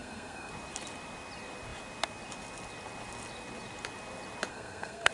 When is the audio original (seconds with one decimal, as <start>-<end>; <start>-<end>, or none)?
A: 0.5-4.5